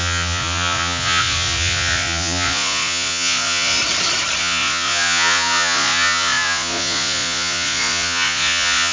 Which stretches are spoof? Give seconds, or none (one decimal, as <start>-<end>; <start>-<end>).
0.0-3.8; 4.4-8.9